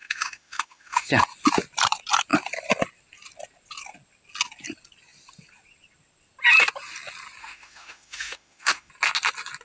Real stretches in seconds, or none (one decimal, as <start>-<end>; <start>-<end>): 1.1-7.4; 8.9-9.6